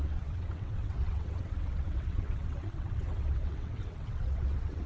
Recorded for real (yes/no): no